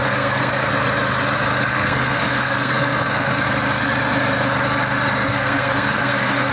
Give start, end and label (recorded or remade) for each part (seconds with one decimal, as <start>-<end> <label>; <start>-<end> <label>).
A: 0.0-0.7 remade; 0.7-1.7 recorded; 1.7-3.3 remade; 3.3-5.3 recorded; 5.3-6.5 remade